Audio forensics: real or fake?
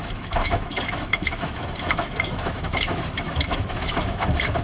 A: fake